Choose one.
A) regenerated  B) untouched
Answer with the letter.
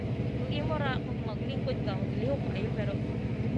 B